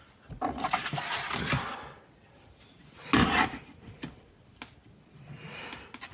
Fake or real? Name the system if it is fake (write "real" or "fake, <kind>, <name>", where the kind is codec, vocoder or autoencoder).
real